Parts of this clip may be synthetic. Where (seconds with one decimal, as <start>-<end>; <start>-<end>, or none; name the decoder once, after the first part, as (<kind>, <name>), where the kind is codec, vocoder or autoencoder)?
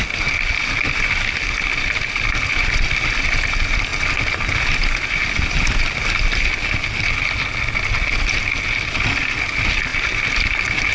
none